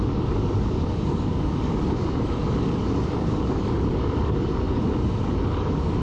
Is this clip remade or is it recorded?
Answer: remade